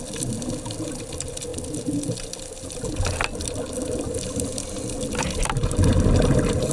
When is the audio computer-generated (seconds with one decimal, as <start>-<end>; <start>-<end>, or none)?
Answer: none

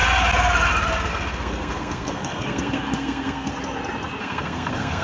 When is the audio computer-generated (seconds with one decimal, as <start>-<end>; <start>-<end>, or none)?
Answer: 1.1-3.5; 4.2-5.0

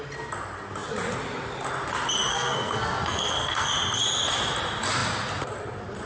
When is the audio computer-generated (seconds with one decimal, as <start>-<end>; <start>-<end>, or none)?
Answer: 2.3-3.7

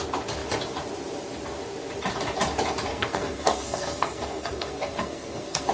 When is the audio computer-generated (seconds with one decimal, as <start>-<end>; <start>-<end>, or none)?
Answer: 2.9-5.7

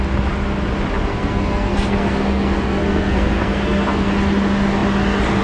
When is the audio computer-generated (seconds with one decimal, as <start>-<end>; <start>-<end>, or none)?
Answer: 1.1-4.1

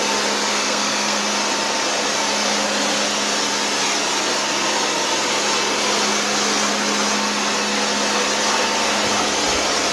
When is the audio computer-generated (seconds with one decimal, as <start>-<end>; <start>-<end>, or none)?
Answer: 0.5-1.2

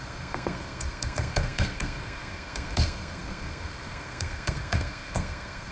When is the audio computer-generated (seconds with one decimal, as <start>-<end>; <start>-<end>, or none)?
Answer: 0.0-5.7

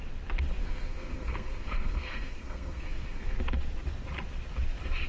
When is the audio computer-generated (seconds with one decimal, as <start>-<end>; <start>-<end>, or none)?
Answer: 0.6-3.4